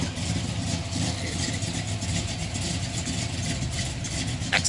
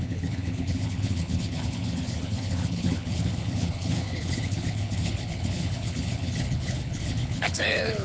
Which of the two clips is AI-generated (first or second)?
second